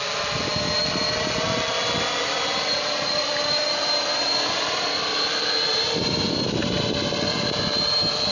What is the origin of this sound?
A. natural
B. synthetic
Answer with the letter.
A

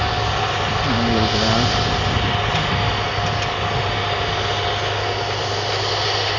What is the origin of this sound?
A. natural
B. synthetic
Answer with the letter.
A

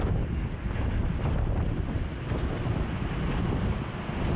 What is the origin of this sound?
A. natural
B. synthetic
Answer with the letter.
A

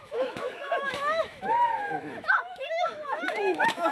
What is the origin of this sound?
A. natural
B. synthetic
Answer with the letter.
B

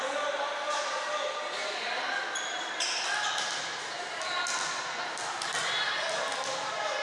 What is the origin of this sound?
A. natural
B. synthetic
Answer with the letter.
A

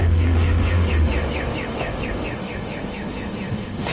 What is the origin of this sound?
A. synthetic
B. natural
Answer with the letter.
A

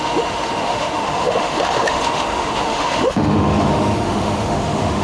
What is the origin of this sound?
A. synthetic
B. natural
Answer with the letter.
A